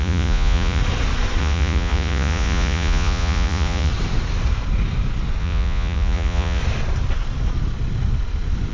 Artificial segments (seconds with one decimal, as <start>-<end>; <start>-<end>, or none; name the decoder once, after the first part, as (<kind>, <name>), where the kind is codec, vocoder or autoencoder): 0.0-0.8 (vocoder, Vocos); 1.4-3.9; 5.4-6.6